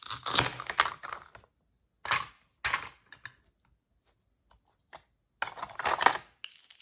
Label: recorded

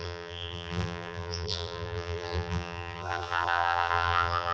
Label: remade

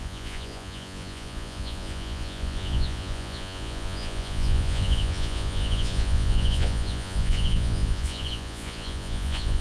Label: remade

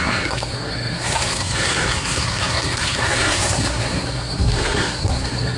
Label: remade